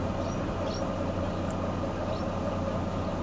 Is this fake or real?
real